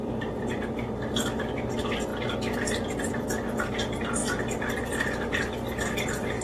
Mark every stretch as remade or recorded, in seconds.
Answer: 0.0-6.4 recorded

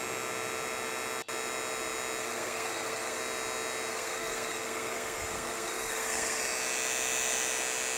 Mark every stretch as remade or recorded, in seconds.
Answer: 0.0-2.2 recorded; 2.2-3.2 remade; 3.2-3.9 recorded; 3.9-6.4 remade; 6.4-8.0 recorded

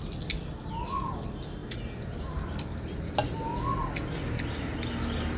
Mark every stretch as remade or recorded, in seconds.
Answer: 0.0-5.4 recorded

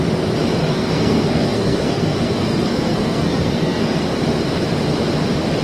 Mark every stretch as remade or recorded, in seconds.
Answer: 0.0-0.6 recorded; 0.6-4.0 remade; 4.0-5.6 recorded

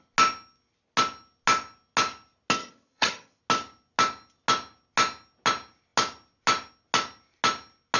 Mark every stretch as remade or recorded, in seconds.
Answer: 0.0-2.6 recorded; 2.6-3.4 remade; 3.4-8.0 recorded